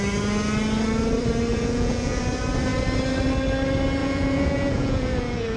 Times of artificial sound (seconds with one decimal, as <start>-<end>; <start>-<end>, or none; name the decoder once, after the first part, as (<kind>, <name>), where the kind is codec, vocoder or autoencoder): 1.5-2.2 (vocoder, Vocos); 4.0-5.6